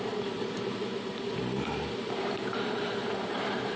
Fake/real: fake